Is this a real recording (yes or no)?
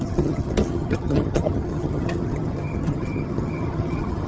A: no